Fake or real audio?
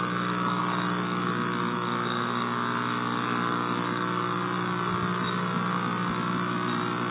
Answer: real